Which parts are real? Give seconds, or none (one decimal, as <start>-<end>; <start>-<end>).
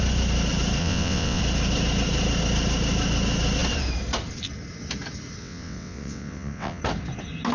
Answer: 0.0-0.8; 1.4-5.4; 6.8-7.5